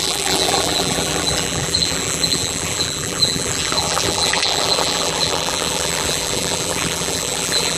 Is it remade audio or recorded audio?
remade